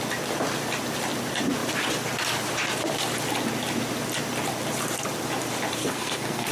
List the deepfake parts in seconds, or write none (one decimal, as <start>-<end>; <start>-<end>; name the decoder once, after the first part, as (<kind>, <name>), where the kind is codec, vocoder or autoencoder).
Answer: 5.8-6.5 (codec, SNAC)